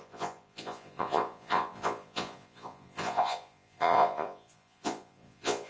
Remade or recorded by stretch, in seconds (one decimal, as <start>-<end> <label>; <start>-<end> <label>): 0.0-5.7 remade